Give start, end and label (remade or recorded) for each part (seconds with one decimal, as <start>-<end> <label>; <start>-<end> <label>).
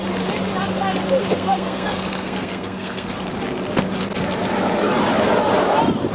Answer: 0.0-1.2 recorded; 1.2-3.1 remade; 3.1-6.1 recorded